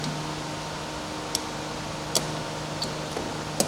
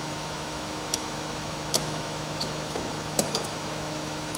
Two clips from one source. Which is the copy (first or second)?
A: second